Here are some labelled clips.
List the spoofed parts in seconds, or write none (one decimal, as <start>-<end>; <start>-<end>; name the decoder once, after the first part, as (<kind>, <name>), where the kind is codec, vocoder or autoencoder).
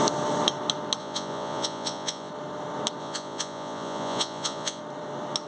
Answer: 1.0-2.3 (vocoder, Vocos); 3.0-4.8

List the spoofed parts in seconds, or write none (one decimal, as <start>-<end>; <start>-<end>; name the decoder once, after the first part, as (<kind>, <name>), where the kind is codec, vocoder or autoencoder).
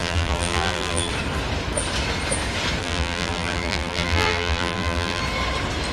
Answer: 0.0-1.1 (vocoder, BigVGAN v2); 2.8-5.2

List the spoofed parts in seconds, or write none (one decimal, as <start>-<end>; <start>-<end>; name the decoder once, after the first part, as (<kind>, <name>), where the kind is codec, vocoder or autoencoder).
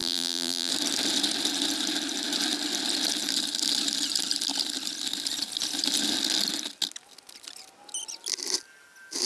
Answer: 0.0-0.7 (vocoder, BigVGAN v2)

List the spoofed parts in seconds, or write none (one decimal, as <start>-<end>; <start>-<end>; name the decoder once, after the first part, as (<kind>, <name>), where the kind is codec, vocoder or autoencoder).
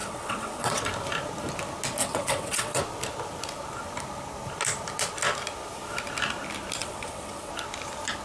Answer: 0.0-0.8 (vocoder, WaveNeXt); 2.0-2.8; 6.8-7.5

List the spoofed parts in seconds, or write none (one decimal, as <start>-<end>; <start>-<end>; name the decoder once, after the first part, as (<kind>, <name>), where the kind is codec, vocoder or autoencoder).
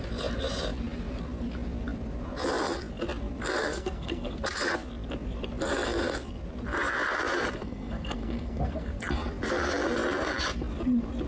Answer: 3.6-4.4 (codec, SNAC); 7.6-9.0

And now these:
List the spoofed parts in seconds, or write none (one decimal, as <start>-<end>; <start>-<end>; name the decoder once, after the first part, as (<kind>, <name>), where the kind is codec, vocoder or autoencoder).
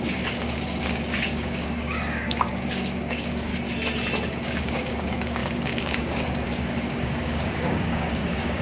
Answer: 0.0-3.5 (codec, DAC); 4.3-8.6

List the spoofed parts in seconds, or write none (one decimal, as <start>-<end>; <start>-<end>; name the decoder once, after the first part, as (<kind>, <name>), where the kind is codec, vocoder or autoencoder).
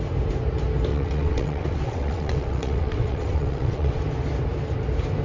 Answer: 0.9-4.0 (vocoder, WaveNeXt)